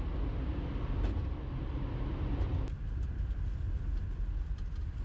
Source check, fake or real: real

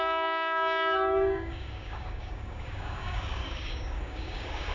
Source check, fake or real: fake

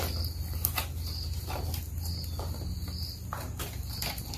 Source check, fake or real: real